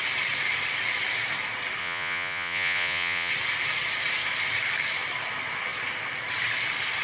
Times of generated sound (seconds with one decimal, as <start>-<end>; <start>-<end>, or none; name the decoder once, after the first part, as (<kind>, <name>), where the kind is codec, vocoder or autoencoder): 1.8-3.3 (vocoder, Vocos)